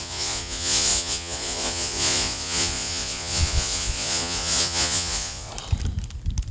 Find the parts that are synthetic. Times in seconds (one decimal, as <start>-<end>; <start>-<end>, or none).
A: 0.0-5.5